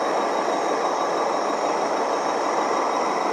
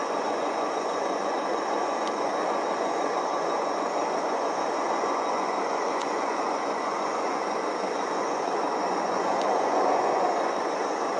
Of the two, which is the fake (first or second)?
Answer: second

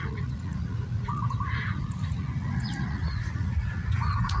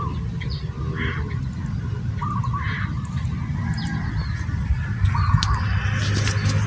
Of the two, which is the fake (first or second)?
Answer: first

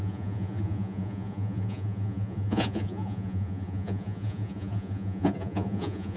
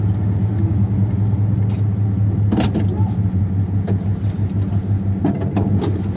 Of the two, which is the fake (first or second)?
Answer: first